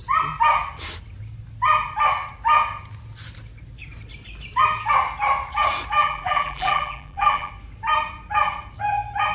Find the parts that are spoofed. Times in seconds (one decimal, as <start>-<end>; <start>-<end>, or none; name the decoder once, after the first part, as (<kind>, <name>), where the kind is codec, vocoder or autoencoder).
6.0-7.5 (vocoder, BigVGAN v2)